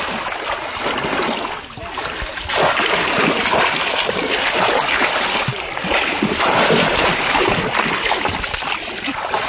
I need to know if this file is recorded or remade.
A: recorded